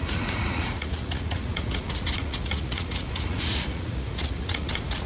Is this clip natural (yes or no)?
no